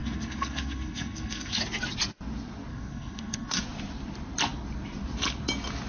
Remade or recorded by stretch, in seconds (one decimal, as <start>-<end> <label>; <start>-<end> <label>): 0.0-1.6 remade; 1.6-2.7 recorded; 2.7-3.6 remade; 3.6-5.9 recorded